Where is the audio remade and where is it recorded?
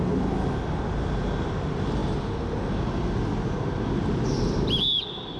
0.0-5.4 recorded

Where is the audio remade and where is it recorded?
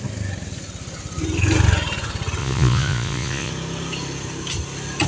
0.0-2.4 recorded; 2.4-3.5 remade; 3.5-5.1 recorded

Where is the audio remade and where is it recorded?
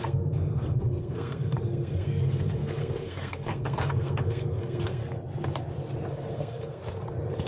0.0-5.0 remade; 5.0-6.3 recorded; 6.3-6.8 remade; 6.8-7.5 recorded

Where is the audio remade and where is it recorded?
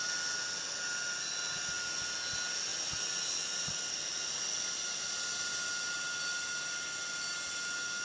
0.0-8.0 recorded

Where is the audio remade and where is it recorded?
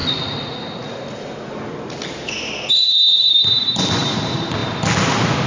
0.0-5.5 recorded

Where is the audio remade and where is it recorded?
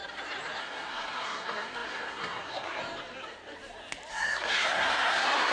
0.0-0.6 recorded; 0.6-2.8 remade; 2.8-4.1 recorded; 4.1-5.5 remade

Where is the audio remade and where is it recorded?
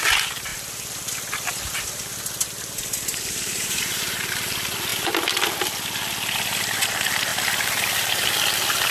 0.0-3.1 recorded; 3.1-4.2 remade; 4.2-8.9 recorded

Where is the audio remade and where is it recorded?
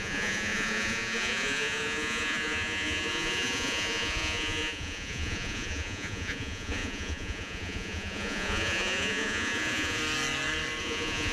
0.0-10.0 remade; 10.0-10.8 recorded; 10.8-11.3 remade